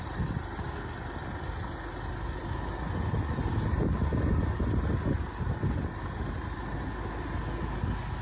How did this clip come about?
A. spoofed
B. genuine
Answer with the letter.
B